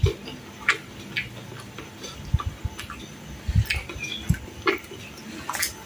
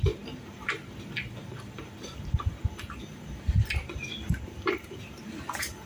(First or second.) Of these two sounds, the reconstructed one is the second